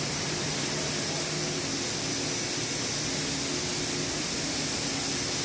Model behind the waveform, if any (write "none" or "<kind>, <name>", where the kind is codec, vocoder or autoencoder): none